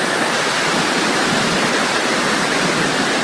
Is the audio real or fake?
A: real